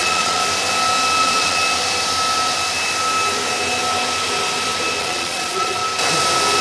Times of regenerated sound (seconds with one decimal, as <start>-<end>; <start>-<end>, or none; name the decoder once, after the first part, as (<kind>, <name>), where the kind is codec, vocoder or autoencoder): 0.0-0.4 (vocoder, Vocos); 1.2-1.6; 5.0-5.8